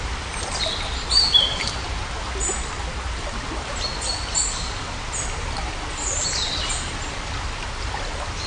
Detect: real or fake real